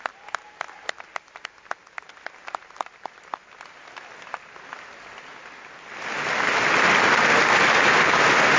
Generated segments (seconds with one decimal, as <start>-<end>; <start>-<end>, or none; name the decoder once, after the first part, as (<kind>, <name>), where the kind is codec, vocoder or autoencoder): none